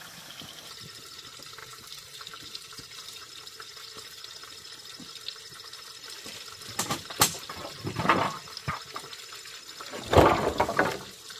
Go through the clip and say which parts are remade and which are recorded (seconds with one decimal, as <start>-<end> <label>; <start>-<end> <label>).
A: 0.0-1.6 recorded; 1.6-3.3 remade; 3.3-11.4 recorded